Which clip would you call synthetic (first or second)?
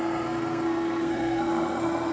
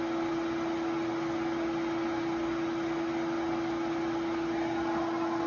first